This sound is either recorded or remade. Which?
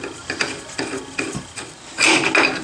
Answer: recorded